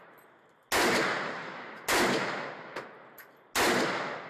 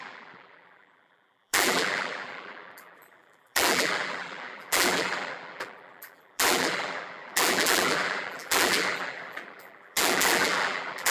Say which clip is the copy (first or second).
second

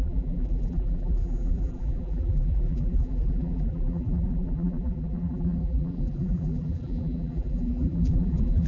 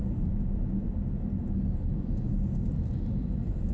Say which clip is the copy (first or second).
first